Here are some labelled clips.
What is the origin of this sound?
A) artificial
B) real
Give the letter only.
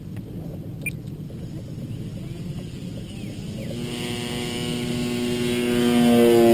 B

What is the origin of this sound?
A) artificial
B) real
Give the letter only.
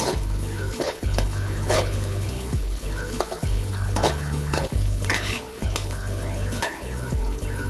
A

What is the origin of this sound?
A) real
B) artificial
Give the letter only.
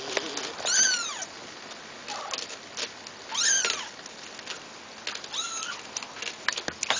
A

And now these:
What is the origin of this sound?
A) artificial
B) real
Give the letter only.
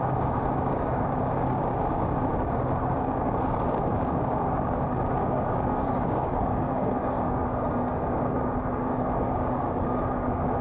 A